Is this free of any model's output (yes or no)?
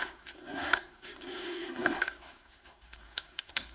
no